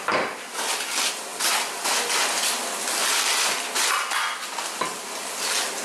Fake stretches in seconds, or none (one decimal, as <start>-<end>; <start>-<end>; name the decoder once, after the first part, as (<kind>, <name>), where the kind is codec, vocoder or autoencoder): none